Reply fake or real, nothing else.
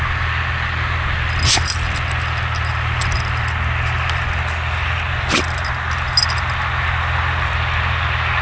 real